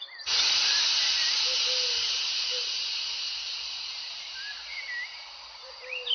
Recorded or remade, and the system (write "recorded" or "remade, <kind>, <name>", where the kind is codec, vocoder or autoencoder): recorded